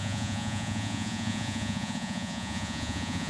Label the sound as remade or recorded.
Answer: remade